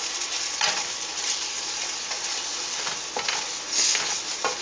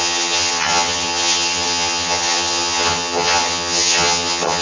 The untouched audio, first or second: first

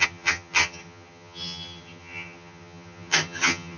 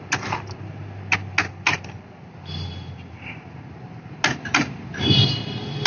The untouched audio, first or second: second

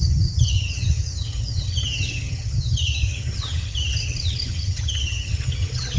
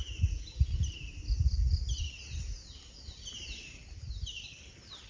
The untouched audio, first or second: second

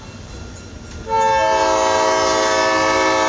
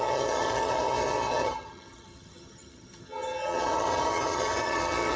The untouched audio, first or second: first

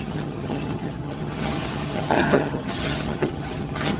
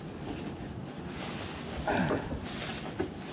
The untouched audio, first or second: second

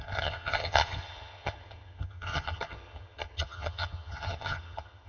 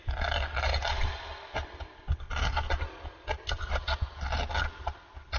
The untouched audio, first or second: second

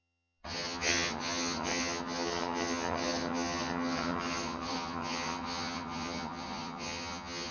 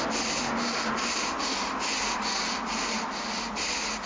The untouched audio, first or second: second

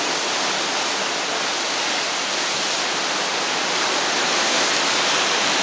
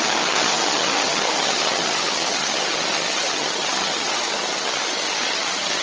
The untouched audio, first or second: first